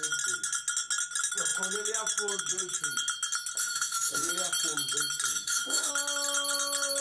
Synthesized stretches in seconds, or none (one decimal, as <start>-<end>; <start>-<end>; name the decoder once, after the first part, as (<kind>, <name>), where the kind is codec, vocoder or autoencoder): 3.6-4.3 (autoencoder, DAC-VAE); 5.3-5.9